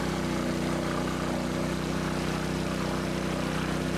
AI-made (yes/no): no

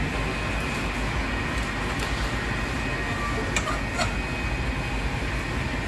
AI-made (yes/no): no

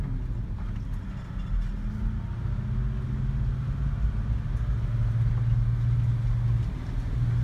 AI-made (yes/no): no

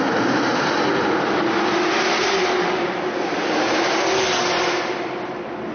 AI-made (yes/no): no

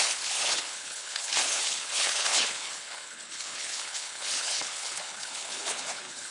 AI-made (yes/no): yes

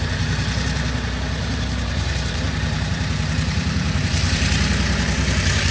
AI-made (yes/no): yes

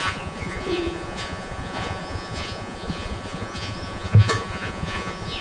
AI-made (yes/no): yes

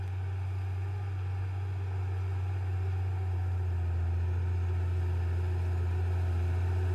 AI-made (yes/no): no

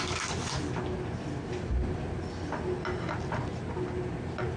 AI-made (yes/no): no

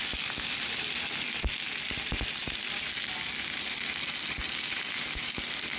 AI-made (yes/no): no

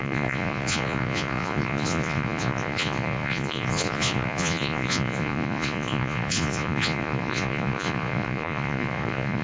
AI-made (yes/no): yes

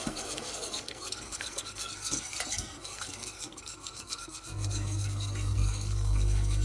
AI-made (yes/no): yes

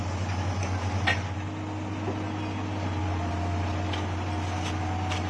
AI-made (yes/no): no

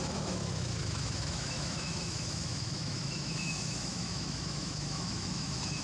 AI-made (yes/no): yes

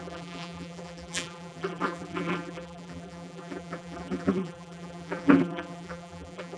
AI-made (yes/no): yes